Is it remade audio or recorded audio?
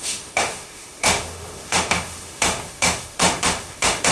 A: remade